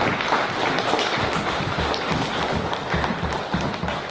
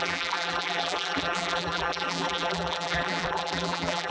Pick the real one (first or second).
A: first